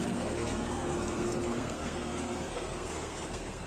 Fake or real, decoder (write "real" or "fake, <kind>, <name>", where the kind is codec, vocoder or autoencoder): fake, codec, SNAC